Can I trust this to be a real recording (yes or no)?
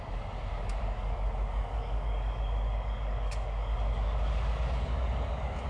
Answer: no